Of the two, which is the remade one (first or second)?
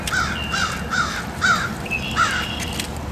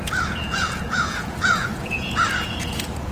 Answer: second